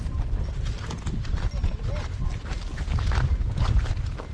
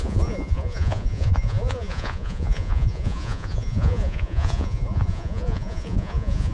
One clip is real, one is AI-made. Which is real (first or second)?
first